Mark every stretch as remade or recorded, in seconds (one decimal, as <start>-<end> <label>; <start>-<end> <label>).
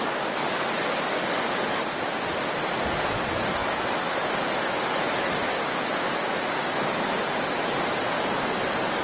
0.0-9.0 recorded